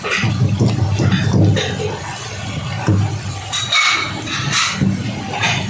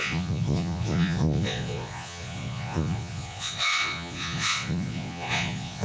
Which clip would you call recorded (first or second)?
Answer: first